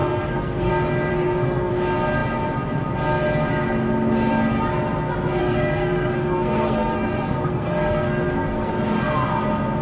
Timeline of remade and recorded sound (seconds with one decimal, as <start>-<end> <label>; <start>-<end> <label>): 0.0-0.7 remade; 0.7-1.1 recorded; 1.1-1.7 remade; 1.7-5.4 recorded; 5.4-8.7 remade; 8.7-9.8 recorded